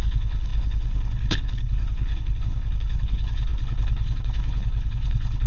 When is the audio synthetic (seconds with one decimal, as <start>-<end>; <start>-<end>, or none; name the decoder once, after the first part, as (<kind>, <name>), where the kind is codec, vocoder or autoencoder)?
0.0-5.5 (codec, HILCodec)